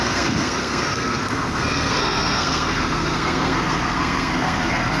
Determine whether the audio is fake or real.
fake